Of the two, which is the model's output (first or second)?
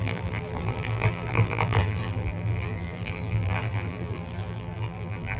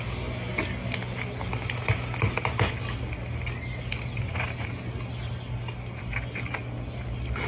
first